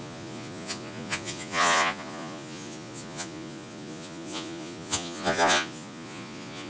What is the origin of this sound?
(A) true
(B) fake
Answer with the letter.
B